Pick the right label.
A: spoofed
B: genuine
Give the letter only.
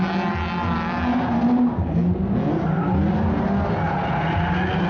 B